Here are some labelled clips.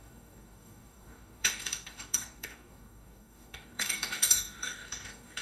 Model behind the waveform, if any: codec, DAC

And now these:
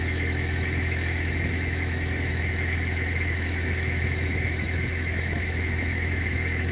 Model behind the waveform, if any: autoencoder, DAC-VAE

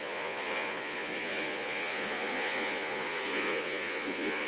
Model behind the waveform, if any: vocoder, Vocos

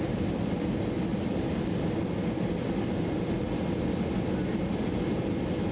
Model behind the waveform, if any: none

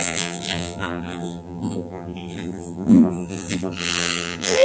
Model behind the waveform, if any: vocoder, BigVGAN v2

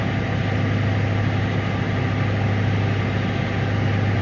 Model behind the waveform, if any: none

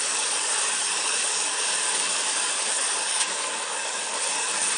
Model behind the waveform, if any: codec, DAC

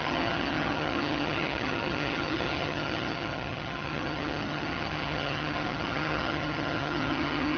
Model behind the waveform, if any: vocoder, HiFi-GAN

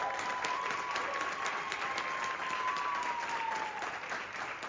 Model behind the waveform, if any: none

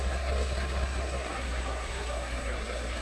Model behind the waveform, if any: codec, SNAC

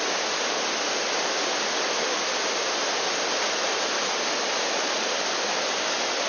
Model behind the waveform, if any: none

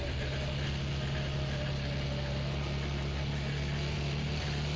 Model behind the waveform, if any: none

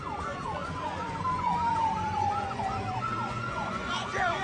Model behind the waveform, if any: vocoder, Vocos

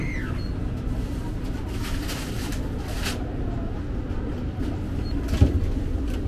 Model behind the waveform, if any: none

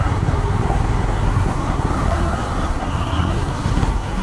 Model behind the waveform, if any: codec, SNAC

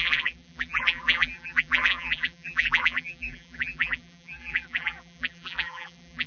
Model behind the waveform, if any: vocoder, BigVGAN v2